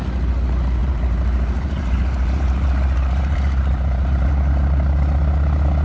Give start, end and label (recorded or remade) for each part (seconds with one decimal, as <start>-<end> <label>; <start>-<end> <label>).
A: 0.0-0.8 recorded; 0.8-4.3 remade; 4.3-5.8 recorded